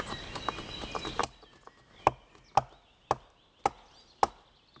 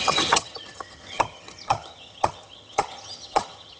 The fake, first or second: second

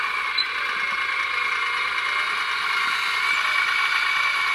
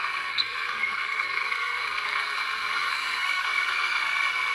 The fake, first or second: second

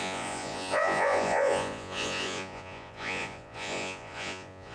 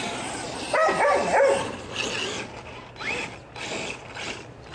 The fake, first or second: first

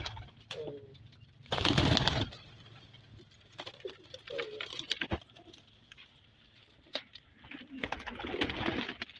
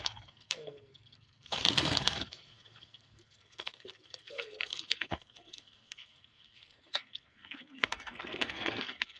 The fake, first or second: second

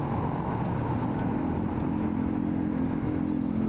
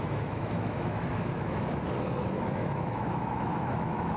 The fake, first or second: second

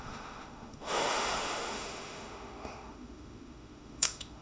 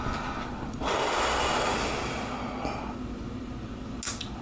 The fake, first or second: first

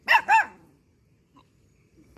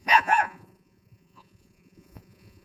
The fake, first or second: second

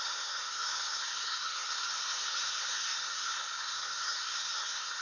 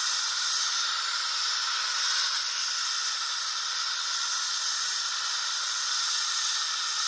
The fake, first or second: first